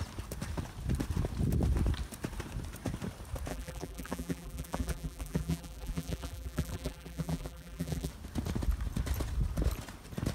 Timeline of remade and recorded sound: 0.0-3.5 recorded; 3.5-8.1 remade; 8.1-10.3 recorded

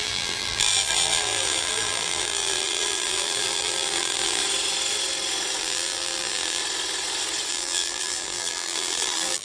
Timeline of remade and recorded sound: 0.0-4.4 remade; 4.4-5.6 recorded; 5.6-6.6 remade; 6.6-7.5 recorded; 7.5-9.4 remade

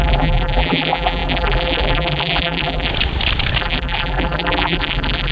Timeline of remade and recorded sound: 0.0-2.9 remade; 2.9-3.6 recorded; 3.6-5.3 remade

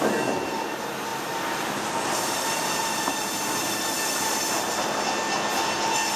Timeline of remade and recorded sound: 0.0-1.1 recorded; 1.1-3.8 remade; 3.8-6.2 recorded